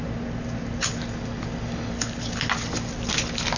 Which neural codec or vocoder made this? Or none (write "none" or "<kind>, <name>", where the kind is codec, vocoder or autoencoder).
none